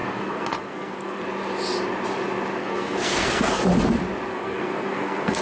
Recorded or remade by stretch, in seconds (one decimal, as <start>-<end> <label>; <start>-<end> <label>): 0.0-1.2 remade; 1.2-2.6 recorded; 2.6-3.6 remade; 3.6-4.3 recorded; 4.3-5.4 remade